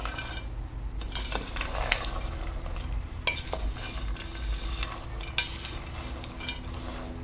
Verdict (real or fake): real